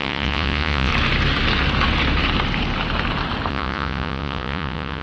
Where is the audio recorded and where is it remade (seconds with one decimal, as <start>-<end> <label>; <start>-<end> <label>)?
0.0-0.9 remade; 0.9-3.5 recorded; 3.5-5.0 remade